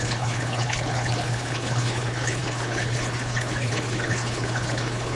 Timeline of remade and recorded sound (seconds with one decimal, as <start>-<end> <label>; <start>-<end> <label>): 0.0-5.2 remade